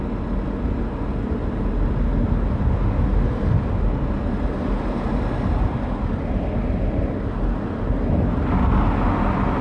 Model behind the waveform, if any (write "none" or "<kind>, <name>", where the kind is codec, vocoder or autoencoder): none